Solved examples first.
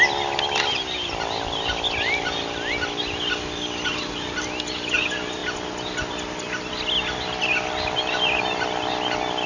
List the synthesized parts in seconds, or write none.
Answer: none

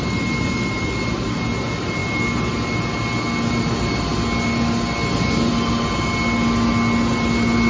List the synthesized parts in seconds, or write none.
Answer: none